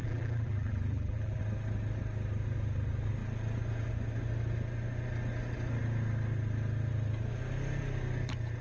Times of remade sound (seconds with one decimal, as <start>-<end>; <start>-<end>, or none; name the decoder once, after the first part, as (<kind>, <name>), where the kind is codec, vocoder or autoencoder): 0.0-1.4 (vocoder, BigVGAN v2)